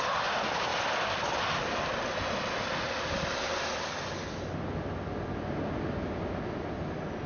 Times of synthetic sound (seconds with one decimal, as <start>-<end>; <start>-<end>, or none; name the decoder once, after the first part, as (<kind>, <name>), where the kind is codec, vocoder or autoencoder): none